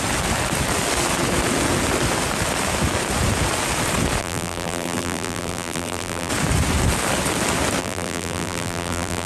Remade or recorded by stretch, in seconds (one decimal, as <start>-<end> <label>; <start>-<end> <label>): 0.0-4.2 recorded; 4.2-6.3 remade; 6.3-7.8 recorded; 7.8-9.3 remade